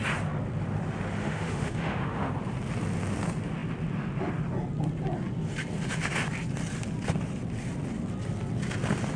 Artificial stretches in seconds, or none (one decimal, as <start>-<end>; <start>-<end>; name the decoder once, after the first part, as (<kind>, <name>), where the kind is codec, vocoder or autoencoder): 1.2-2.3 (autoencoder, DAC-VAE)